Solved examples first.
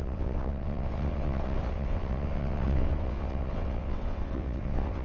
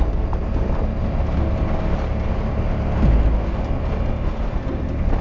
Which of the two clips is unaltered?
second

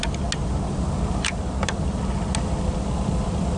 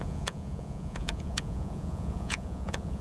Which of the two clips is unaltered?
first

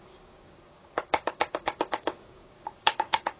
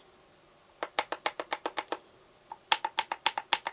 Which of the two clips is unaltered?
second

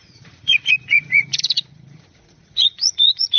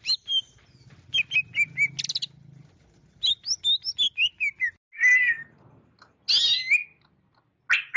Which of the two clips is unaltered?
second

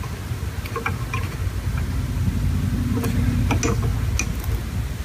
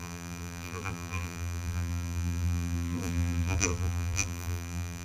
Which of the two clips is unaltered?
first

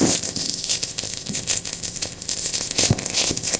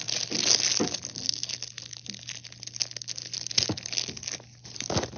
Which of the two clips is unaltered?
second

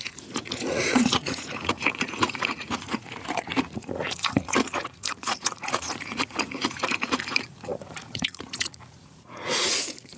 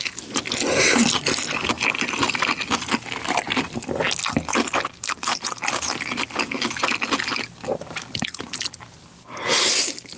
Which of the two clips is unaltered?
second